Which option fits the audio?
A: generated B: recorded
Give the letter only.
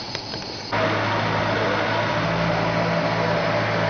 B